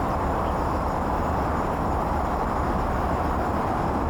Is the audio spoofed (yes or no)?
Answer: yes